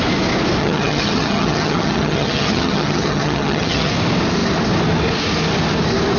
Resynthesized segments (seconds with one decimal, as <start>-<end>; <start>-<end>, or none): 0.6-3.9